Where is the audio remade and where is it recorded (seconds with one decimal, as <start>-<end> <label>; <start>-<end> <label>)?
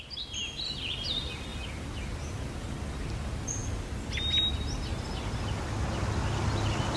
0.0-7.0 recorded